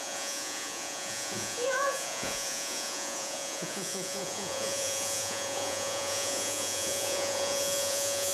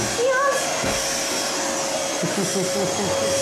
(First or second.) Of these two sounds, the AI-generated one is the first